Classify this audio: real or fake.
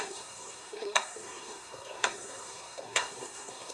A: fake